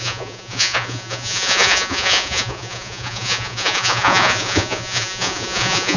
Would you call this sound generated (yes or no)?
yes